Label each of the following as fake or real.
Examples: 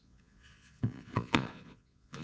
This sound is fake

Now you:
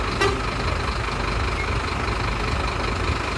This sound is real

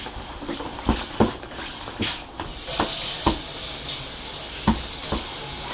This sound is real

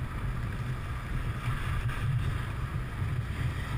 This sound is real